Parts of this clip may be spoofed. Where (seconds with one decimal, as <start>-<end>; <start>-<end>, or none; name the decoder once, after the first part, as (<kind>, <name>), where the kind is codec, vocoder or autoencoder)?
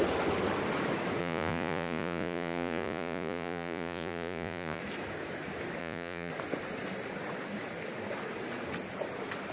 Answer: 1.2-4.8 (vocoder, Vocos); 5.8-6.3